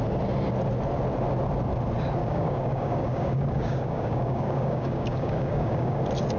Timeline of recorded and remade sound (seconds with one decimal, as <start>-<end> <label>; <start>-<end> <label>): 0.0-2.2 recorded; 2.2-6.0 remade; 6.0-6.4 recorded

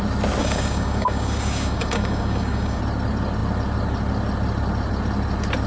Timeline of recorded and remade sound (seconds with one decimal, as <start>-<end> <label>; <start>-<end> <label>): 0.0-0.4 recorded; 0.4-2.8 remade; 2.8-5.7 recorded

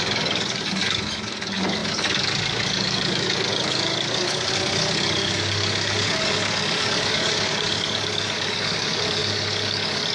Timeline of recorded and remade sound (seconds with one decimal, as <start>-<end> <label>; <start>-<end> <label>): 0.0-10.1 remade

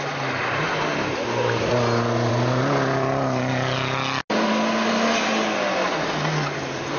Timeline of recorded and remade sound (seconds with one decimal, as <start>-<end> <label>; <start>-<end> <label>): 0.0-7.0 recorded